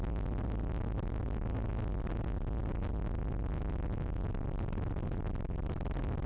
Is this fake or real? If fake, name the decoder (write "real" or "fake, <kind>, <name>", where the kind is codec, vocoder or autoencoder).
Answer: real